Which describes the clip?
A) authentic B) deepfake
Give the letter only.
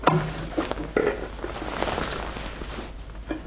A